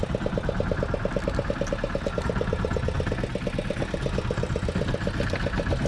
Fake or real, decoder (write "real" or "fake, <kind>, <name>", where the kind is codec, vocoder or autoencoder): real